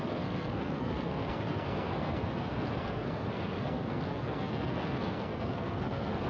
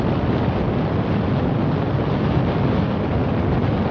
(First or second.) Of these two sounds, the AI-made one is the first